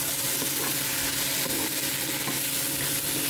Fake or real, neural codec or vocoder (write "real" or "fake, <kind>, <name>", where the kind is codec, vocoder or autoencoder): real